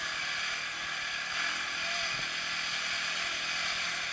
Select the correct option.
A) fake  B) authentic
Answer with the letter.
B